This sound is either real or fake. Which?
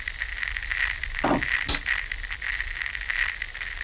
real